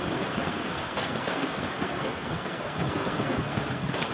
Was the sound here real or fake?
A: fake